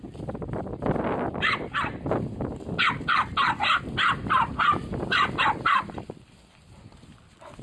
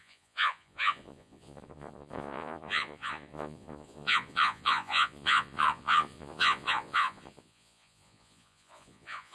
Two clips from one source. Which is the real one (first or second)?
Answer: first